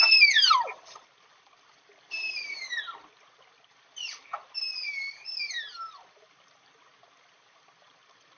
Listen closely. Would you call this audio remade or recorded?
remade